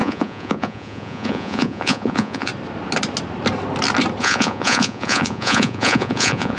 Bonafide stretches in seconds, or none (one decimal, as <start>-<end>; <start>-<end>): 2.5-4.2